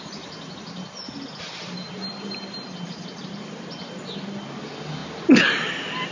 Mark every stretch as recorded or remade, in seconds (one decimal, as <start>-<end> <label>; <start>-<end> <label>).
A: 0.0-6.1 recorded